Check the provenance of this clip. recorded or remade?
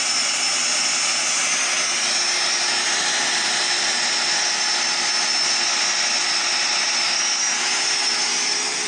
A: recorded